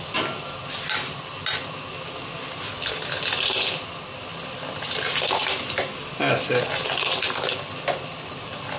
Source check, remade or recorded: recorded